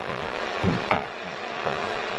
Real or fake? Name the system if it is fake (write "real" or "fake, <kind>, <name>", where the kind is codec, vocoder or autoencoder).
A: fake, vocoder, Vocos